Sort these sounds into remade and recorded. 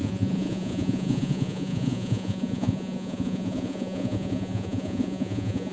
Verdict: remade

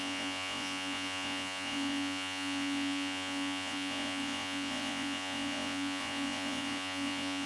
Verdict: remade